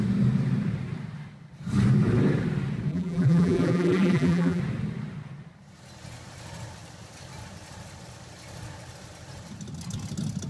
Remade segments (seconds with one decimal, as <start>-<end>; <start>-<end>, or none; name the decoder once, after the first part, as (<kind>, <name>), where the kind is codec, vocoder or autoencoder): 2.9-4.6 (vocoder, BigVGAN v2)